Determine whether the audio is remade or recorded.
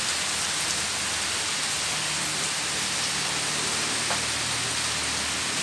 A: recorded